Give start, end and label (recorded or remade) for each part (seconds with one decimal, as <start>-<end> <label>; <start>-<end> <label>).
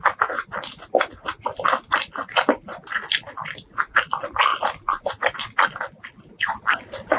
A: 0.0-7.2 recorded